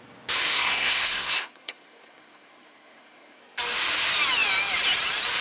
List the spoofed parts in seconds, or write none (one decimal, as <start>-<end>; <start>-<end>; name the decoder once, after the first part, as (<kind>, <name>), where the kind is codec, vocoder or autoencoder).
0.5-3.4 (codec, SNAC)